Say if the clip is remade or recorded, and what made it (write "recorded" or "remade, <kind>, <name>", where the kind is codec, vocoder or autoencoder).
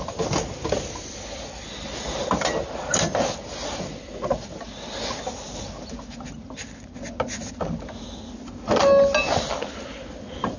recorded